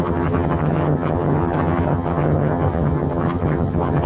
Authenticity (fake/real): fake